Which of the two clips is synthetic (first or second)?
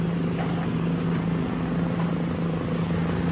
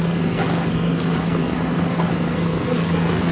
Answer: second